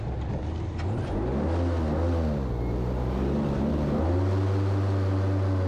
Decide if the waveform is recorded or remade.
recorded